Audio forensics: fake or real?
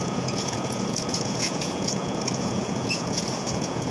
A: fake